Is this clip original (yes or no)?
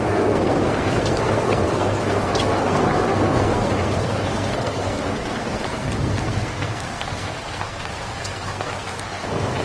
no